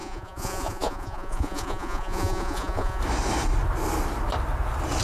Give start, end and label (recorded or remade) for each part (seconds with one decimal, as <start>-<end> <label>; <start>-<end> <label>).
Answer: 0.0-3.0 remade; 3.0-5.0 recorded